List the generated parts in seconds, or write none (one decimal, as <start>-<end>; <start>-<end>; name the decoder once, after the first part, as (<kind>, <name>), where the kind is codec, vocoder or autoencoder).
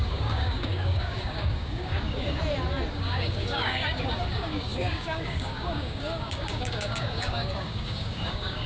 0.0-2.4 (codec, DAC); 2.9-8.7